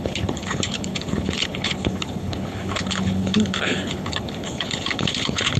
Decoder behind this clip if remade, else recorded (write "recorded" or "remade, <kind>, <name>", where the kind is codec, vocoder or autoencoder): remade, codec, HILCodec